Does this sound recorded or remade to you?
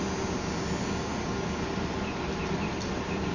recorded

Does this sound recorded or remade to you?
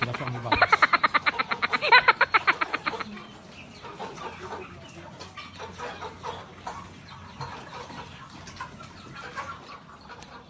recorded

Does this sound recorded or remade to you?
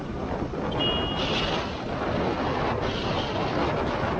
recorded